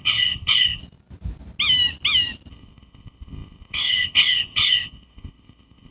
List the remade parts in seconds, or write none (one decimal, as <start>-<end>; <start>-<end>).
0.0-0.8; 2.5-5.9